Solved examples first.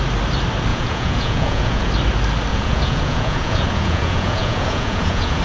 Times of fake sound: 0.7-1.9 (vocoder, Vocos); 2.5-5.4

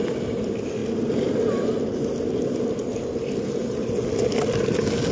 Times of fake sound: none

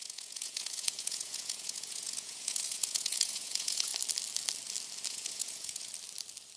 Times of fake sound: 0.0-3.9 (vocoder, Vocos); 5.1-5.9